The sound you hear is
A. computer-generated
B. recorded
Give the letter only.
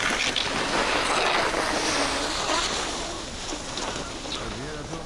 B